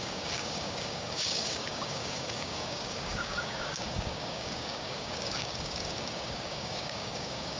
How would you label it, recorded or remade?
remade